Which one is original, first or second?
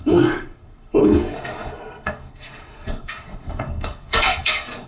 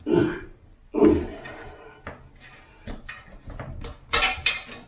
second